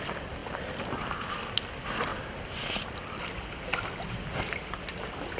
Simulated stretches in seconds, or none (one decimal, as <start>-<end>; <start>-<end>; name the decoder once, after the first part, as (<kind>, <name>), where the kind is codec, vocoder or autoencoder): 0.0-5.4 (vocoder, BigVGAN v2)